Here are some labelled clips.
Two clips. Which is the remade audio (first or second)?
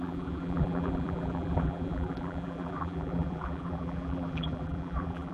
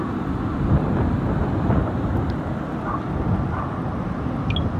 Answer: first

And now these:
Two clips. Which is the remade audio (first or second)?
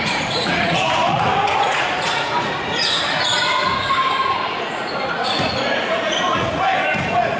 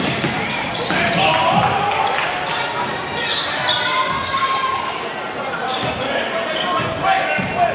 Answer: first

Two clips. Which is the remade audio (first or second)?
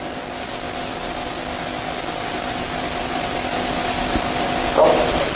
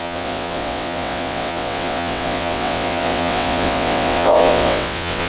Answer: second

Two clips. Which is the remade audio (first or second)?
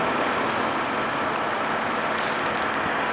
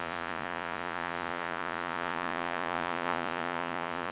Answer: second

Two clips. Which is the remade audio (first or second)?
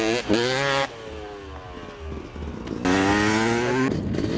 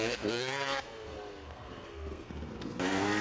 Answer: second